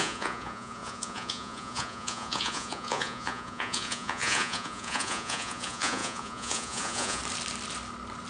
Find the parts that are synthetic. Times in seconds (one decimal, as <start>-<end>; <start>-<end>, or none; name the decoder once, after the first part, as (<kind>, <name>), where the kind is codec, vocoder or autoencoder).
0.0-7.2 (vocoder, Vocos)